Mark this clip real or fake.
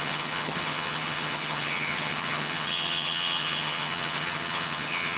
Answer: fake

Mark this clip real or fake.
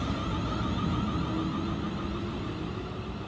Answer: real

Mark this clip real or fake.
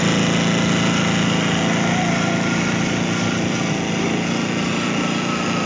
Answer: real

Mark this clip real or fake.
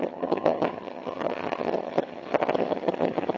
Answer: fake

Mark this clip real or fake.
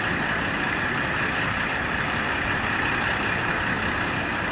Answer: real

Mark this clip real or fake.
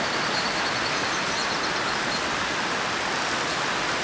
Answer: real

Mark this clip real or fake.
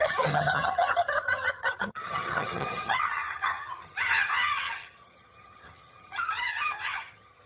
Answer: fake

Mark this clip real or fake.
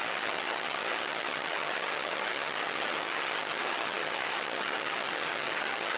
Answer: fake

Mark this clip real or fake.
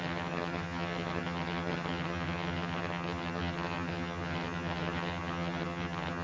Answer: fake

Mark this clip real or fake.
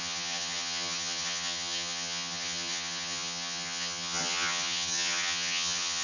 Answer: fake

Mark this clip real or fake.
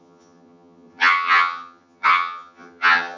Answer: fake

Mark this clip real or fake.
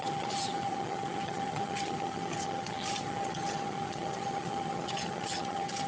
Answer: fake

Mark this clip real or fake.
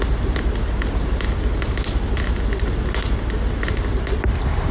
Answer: real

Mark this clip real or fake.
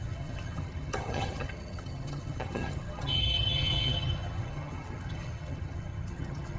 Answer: fake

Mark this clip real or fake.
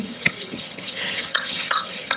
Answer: fake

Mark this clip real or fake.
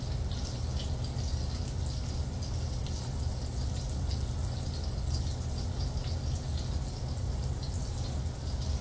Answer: real